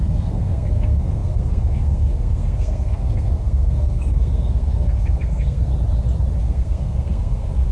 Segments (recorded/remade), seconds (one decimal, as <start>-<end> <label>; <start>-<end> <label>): 0.0-5.7 remade; 5.7-6.4 recorded; 6.4-7.7 remade